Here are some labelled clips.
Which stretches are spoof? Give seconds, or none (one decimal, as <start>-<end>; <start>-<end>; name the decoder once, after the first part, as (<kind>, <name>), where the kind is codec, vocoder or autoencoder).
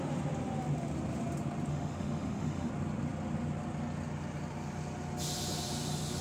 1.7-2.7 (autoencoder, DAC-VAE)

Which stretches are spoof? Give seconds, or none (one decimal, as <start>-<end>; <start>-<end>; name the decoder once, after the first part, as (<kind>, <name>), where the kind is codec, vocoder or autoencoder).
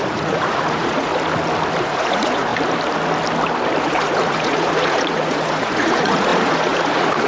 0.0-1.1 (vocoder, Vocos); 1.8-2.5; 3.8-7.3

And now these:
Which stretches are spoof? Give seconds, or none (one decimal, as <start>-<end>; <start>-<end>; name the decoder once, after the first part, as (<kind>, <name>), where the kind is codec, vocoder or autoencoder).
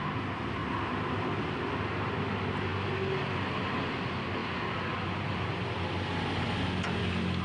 none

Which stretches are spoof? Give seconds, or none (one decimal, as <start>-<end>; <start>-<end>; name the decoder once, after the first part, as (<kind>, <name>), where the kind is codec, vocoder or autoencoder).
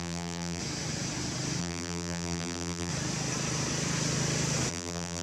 0.0-0.6 (vocoder, BigVGAN v2); 1.6-2.9; 4.7-5.2